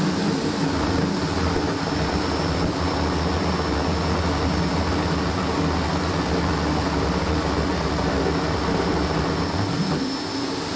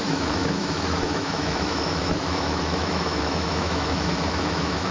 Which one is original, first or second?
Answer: first